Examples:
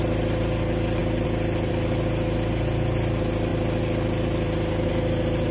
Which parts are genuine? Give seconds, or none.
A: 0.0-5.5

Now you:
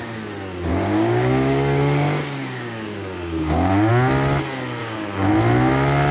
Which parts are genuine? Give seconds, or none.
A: 0.0-0.7; 3.9-4.8; 5.3-6.1

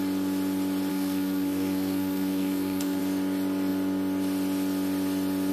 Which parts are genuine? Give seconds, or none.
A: 0.0-0.9; 3.0-5.5

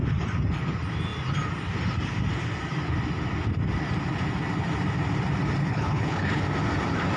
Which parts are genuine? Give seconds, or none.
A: 0.0-5.6; 6.4-7.2

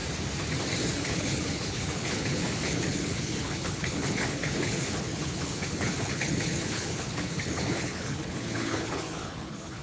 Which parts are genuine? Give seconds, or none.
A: 0.0-0.9

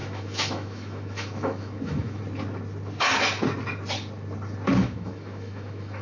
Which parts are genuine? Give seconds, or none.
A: 2.2-4.8

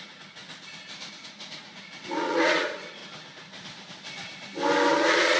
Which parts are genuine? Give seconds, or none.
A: 0.4-1.1; 3.0-4.9